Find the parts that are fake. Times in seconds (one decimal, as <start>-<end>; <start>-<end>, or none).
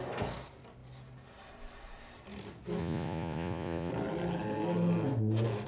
2.8-3.9